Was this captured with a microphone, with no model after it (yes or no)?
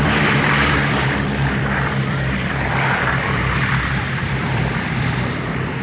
no